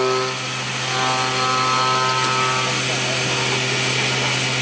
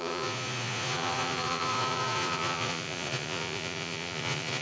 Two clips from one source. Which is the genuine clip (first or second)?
first